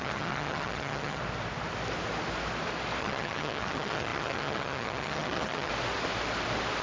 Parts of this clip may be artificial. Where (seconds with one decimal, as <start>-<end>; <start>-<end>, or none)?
0.0-1.2; 3.0-5.7